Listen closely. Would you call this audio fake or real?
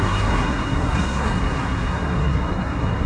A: fake